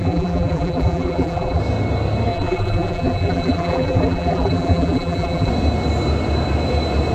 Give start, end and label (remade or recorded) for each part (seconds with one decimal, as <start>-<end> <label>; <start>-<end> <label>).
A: 0.0-1.6 remade; 1.6-2.3 recorded; 2.3-5.5 remade; 5.5-7.1 recorded

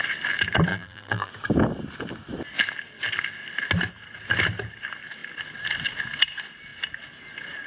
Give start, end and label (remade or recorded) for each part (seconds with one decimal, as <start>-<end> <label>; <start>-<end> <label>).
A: 0.0-0.7 recorded; 0.7-1.3 remade; 1.3-7.7 recorded

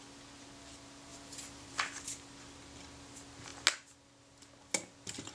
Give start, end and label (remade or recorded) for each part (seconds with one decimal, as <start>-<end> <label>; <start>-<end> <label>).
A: 0.0-1.1 recorded; 1.1-1.8 remade; 1.8-5.3 recorded

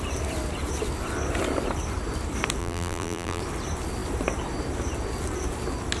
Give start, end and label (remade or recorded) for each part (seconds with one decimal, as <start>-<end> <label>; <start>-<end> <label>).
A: 0.0-2.6 recorded; 2.6-3.4 remade; 3.4-6.0 recorded

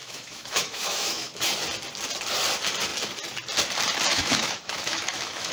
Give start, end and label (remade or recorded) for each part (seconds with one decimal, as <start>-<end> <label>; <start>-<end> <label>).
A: 0.0-1.4 remade; 1.4-4.1 recorded; 4.1-5.5 remade

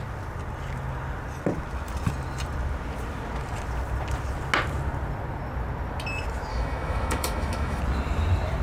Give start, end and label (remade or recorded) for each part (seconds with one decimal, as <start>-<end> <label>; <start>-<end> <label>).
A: 0.0-6.5 recorded; 6.5-7.8 remade; 7.8-8.6 recorded

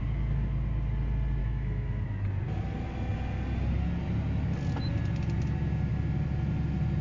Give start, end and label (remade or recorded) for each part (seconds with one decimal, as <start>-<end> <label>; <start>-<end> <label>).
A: 0.0-1.4 recorded; 1.4-2.0 remade; 2.0-7.0 recorded

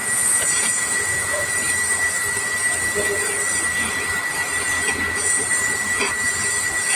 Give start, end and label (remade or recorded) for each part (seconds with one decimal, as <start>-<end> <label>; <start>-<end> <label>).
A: 0.0-1.5 remade; 1.5-7.0 recorded